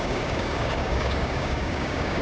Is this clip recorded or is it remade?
remade